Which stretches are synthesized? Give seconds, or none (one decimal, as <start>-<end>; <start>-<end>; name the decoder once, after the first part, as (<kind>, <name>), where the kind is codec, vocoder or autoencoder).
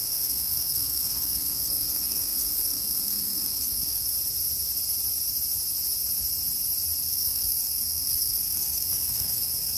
0.0-4.1 (codec, SNAC); 7.0-9.8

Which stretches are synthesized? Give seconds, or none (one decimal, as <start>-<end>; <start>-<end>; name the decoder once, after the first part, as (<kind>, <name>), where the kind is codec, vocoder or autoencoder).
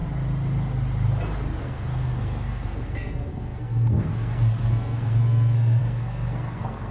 1.6-6.9 (codec, SNAC)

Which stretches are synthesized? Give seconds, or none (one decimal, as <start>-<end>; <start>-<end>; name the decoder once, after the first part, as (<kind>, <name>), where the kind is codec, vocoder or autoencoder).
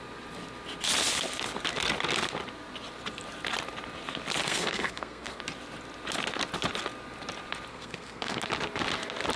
4.4-5.4 (codec, SNAC); 7.7-8.4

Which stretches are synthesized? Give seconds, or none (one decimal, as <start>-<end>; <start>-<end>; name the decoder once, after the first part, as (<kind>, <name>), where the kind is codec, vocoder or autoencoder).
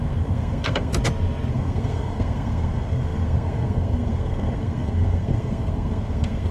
0.0-0.9 (codec, SNAC); 1.5-6.5